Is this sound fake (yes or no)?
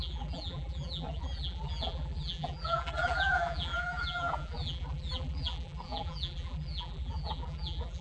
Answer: yes